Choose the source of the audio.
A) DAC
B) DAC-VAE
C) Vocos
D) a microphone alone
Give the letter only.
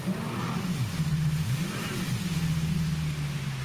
D